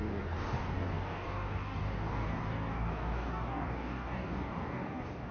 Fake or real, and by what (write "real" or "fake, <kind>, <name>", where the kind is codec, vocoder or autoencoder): fake, codec, DAC